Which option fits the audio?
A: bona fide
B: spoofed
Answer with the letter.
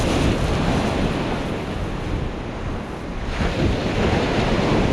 A